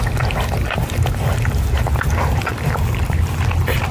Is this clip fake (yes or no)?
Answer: no